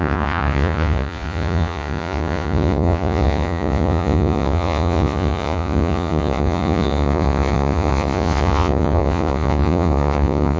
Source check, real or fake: fake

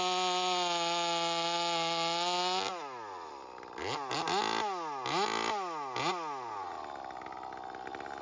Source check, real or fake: real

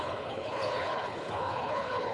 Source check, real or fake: fake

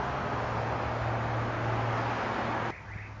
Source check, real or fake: real